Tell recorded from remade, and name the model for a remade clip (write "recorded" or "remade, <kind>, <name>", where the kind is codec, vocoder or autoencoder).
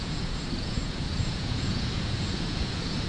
remade, vocoder, Vocos